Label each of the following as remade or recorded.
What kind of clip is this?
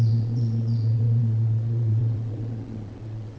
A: remade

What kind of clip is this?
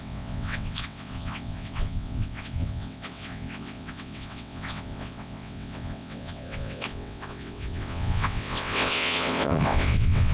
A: remade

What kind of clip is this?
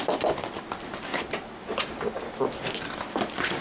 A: recorded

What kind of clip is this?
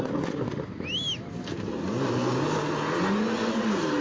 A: recorded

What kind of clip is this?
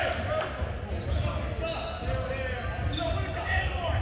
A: recorded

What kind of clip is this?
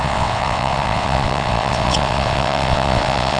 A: remade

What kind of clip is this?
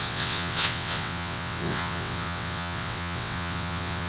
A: remade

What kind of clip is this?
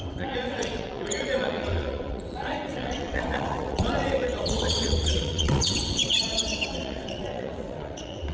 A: remade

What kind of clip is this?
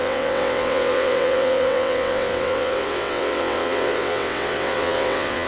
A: remade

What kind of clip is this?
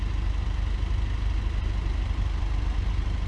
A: recorded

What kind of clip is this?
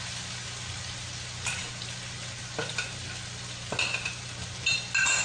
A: recorded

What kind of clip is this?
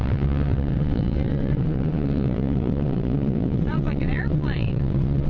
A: remade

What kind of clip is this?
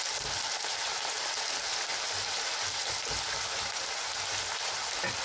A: recorded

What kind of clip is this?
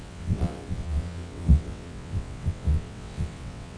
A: remade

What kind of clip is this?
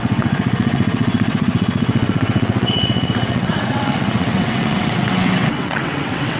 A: remade